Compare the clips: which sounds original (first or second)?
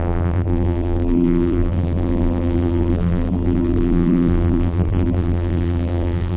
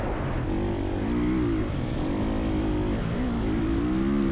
second